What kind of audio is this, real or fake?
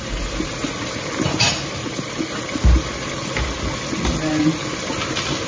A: real